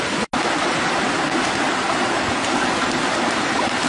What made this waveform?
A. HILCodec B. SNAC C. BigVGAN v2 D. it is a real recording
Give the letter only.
D